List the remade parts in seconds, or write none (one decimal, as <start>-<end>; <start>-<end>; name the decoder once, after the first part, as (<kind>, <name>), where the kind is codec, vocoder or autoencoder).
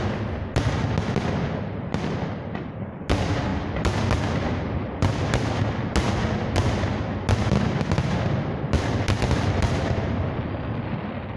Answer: none